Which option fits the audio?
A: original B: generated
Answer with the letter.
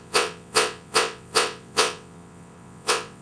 B